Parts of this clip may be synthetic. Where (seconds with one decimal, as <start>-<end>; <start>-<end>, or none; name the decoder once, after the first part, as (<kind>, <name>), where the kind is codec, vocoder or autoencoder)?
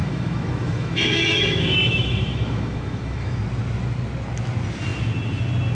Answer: 0.0-3.4 (autoencoder, DAC-VAE)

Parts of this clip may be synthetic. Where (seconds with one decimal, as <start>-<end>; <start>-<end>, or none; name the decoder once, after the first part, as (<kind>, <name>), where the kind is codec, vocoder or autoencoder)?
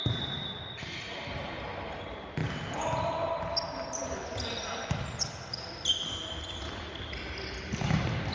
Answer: none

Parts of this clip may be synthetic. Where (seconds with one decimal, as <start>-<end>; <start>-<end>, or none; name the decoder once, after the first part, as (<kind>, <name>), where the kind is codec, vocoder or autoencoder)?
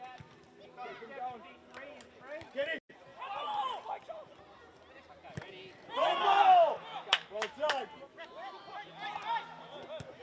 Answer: 6.9-7.5 (autoencoder, DAC-VAE); 8.1-8.6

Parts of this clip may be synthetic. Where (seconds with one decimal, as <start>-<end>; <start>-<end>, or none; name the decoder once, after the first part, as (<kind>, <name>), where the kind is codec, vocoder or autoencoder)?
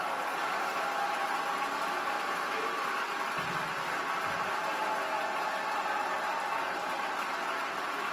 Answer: none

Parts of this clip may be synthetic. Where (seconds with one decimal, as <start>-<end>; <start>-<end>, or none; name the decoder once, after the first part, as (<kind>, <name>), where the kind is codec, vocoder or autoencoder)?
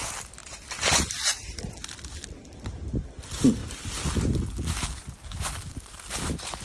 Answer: none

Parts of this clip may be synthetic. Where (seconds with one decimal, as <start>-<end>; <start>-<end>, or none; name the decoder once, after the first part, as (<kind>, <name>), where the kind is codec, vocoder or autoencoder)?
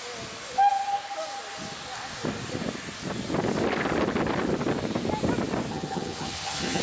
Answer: 5.7-6.8 (vocoder, HiFi-GAN)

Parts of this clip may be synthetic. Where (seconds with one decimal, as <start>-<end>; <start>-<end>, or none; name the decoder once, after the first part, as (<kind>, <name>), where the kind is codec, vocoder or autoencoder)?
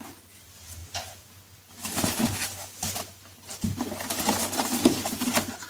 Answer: none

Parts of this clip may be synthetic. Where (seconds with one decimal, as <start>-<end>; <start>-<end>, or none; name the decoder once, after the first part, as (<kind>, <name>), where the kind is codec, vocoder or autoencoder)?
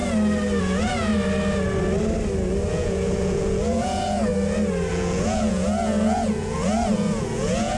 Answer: 0.6-1.1 (vocoder, Vocos); 2.7-4.3; 4.9-7.8